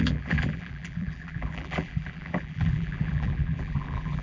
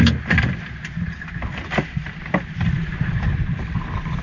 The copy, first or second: first